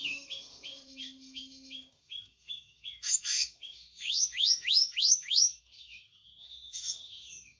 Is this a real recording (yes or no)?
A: no